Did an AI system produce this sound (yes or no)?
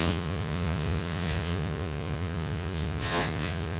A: yes